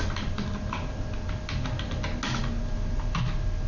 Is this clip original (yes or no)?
yes